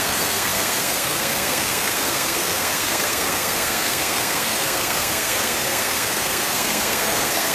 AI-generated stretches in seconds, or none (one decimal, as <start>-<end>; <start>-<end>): 0.0-7.5